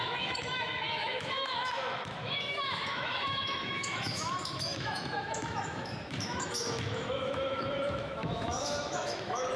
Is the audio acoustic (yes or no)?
no